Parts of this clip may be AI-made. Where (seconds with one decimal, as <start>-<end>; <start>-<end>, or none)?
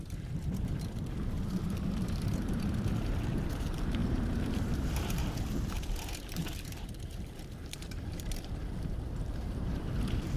0.0-10.4